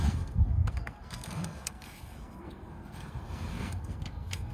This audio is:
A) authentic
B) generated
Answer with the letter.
B